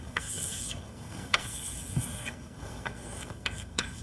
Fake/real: fake